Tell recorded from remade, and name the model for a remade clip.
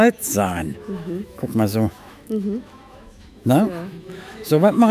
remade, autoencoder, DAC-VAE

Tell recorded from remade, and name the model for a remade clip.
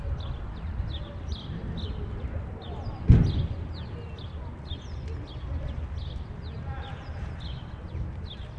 recorded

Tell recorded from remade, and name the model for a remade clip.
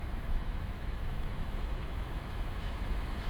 remade, autoencoder, DAC-VAE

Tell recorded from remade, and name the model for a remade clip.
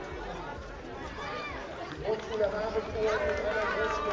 recorded